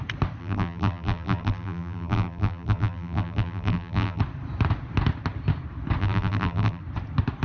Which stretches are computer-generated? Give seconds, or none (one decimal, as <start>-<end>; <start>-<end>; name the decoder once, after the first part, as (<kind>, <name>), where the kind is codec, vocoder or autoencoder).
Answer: 0.4-4.2 (vocoder, BigVGAN v2); 6.0-6.8